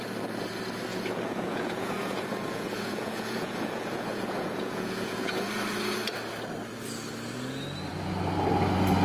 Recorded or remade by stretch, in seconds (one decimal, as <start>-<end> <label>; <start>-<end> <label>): 0.0-0.9 recorded; 0.9-5.5 remade; 5.5-9.0 recorded